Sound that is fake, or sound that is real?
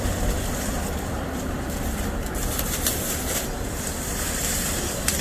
fake